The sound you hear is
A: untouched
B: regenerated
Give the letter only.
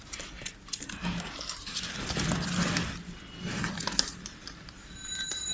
A